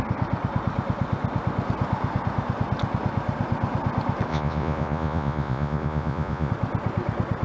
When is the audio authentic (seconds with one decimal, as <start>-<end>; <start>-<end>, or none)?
0.0-4.3; 6.5-7.4